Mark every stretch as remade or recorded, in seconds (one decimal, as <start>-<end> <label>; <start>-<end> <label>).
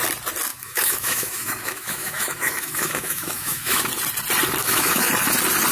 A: 0.0-0.5 recorded; 0.5-3.9 remade; 3.9-4.6 recorded; 4.6-5.1 remade; 5.1-5.7 recorded